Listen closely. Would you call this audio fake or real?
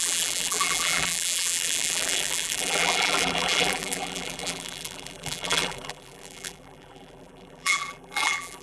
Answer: fake